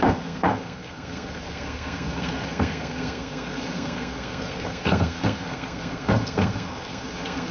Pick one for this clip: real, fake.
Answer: fake